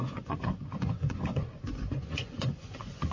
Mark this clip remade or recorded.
remade